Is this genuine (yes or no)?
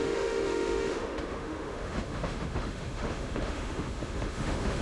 no